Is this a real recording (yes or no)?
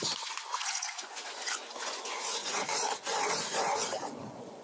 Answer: no